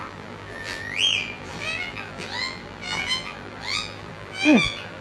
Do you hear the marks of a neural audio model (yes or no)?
yes